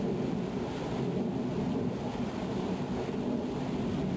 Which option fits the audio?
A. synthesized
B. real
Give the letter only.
B